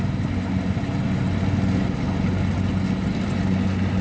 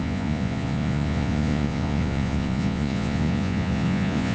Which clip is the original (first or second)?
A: first